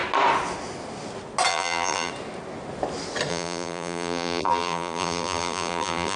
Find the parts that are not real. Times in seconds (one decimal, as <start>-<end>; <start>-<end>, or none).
1.5-2.1; 3.3-6.2